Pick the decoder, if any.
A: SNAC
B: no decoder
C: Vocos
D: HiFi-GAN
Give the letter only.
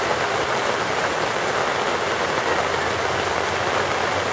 B